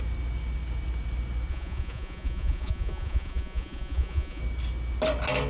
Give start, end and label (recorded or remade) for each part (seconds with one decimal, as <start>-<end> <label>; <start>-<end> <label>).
0.0-1.5 recorded; 1.5-4.4 remade; 4.4-5.5 recorded